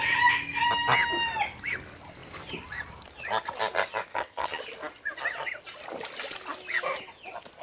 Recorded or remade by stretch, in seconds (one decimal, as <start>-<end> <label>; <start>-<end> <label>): 0.0-4.1 recorded; 4.1-4.6 remade; 4.6-7.6 recorded